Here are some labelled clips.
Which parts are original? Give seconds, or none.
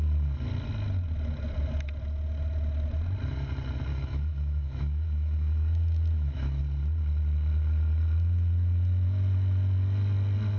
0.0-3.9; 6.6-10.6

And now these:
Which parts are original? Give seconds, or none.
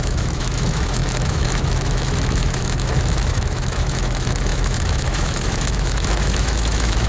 none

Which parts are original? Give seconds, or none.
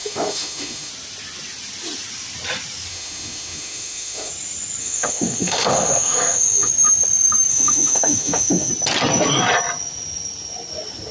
0.9-2.9; 4.3-4.8; 6.7-7.5; 8.7-11.1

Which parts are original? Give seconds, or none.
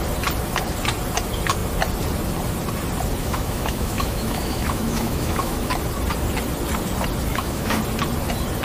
0.0-3.2; 5.7-7.3; 7.8-8.6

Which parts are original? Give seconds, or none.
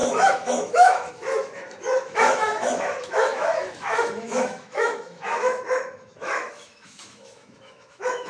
none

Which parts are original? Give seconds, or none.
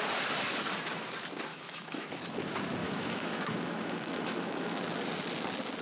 0.0-1.5; 2.1-2.8; 4.8-5.8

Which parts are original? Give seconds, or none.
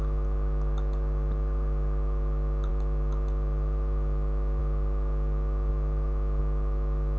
0.0-7.2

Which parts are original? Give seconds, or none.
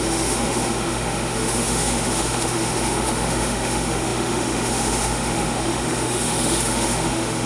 none